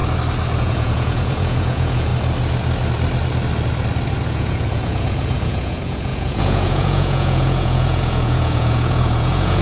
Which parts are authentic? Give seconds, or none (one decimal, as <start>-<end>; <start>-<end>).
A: 0.0-0.6; 2.1-4.3

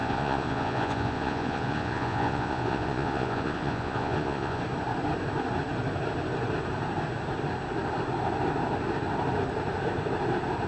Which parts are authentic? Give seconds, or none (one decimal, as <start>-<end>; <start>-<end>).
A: 4.6-10.7

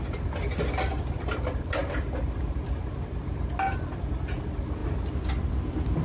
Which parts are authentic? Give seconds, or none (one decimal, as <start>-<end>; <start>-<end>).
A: 0.0-6.0

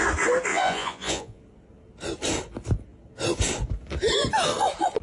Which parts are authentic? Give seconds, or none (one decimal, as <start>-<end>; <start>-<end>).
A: 0.0-0.5; 1.4-5.0